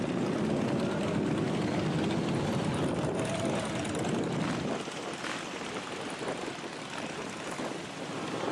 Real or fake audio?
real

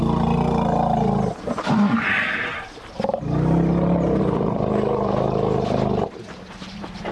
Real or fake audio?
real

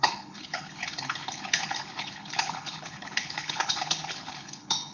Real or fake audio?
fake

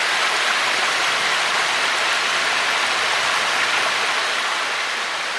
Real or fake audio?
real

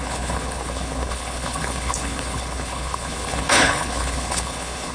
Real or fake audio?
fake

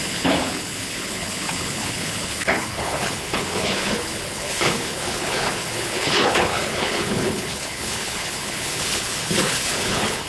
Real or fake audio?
fake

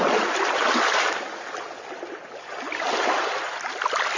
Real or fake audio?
real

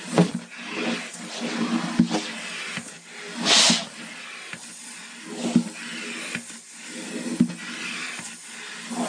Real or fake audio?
real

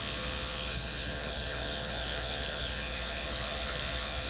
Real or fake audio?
fake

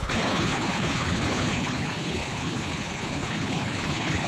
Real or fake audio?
fake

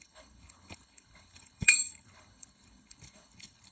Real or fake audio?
fake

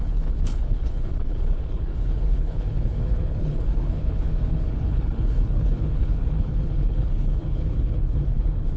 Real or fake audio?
fake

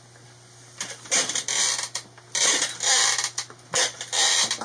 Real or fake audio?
real